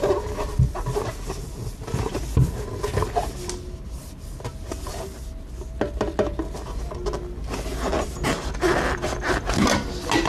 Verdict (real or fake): real